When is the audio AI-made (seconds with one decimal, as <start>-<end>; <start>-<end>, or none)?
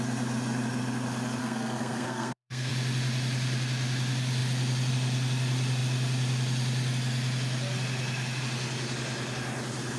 1.4-2.7